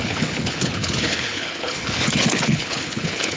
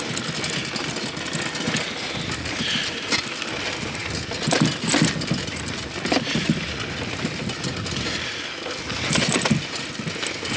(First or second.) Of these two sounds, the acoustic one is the second